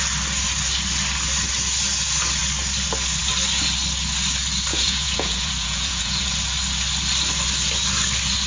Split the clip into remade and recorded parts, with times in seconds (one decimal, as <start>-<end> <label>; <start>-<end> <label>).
0.0-4.7 recorded; 4.7-6.2 remade; 6.2-8.5 recorded

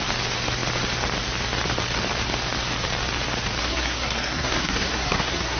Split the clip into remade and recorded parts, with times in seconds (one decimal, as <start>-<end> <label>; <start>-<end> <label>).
0.0-3.6 recorded; 3.6-5.6 remade